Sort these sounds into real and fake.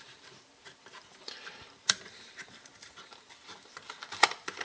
fake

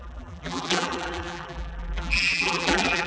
fake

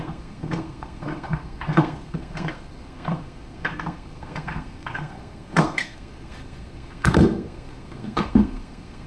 fake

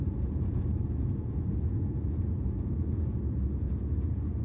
fake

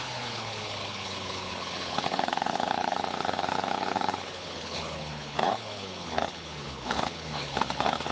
fake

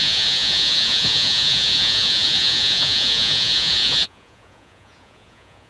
fake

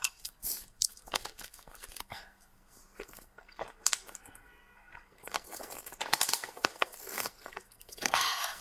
fake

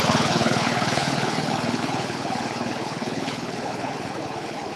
fake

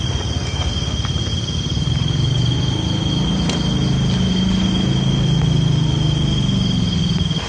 real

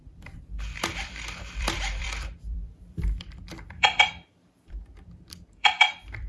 fake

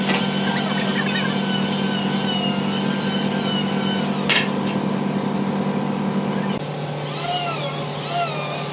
real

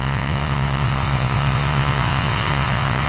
fake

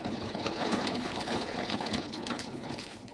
fake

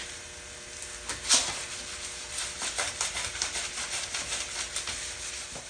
real